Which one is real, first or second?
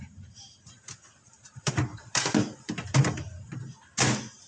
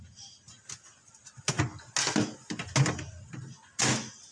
second